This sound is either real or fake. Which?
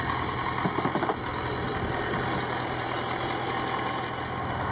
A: real